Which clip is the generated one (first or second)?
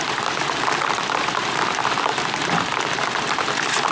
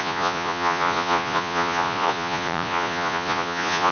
second